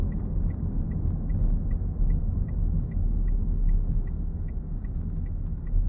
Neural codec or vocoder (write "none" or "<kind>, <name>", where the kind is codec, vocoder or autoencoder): none